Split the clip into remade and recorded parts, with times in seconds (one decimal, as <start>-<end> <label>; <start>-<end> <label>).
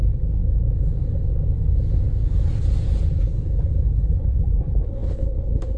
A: 0.0-0.4 remade; 0.4-3.9 recorded; 3.9-5.8 remade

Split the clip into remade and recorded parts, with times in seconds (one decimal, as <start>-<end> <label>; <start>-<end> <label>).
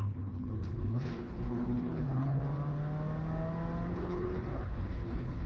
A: 0.0-2.4 remade; 2.4-3.9 recorded; 3.9-5.5 remade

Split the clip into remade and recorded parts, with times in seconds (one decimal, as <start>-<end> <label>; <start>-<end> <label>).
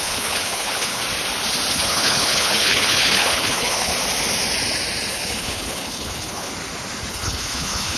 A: 0.0-1.0 remade; 1.0-1.7 recorded; 1.7-3.9 remade; 3.9-5.1 recorded; 5.1-6.5 remade; 6.5-7.1 recorded; 7.1-8.0 remade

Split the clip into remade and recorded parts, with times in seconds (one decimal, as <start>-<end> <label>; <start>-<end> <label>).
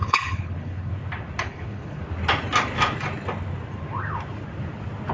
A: 0.0-0.9 remade; 0.9-1.4 recorded; 1.4-2.0 remade; 2.0-5.1 recorded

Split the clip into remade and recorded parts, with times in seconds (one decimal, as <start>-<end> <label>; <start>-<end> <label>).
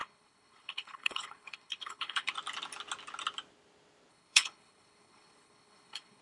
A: 0.0-2.3 remade; 2.3-4.1 recorded; 4.1-6.2 remade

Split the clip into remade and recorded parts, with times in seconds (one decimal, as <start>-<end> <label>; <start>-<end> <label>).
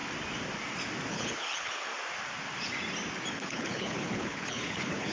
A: 0.0-1.1 recorded; 1.1-1.9 remade; 1.9-3.3 recorded; 3.3-5.1 remade